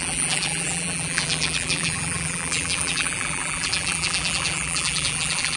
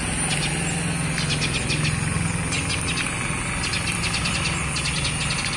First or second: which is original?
second